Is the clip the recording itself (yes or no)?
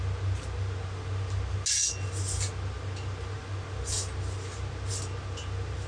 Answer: yes